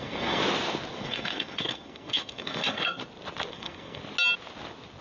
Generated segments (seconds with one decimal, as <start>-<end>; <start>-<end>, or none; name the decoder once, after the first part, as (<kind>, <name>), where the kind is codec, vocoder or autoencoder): 0.0-0.4 (codec, SNAC); 0.9-3.0; 3.5-4.0